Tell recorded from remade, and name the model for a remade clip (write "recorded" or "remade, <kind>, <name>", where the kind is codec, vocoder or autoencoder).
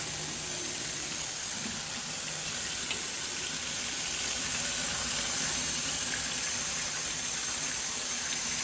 recorded